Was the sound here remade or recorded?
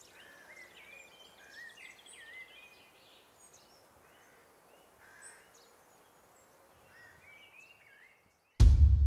recorded